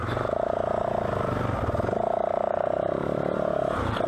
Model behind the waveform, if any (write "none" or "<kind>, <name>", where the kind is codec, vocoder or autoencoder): none